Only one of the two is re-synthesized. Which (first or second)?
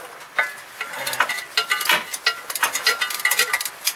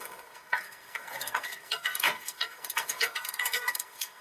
second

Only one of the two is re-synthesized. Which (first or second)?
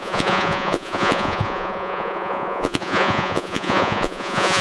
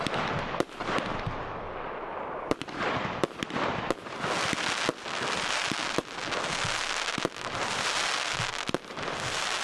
first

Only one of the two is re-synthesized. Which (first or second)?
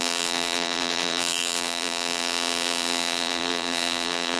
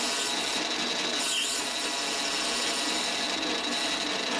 first